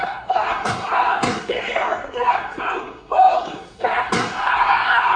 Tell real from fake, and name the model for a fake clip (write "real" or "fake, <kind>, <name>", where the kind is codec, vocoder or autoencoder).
fake, codec, SNAC